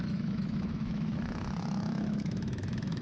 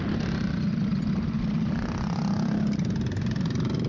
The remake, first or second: first